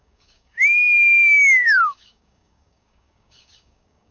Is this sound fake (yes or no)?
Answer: yes